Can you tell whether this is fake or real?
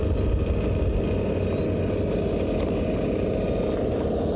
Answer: real